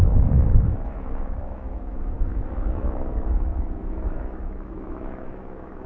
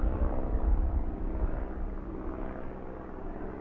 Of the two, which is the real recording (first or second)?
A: second